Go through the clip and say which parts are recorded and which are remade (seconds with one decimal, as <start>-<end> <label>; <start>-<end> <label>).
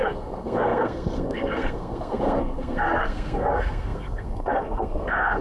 0.0-5.4 remade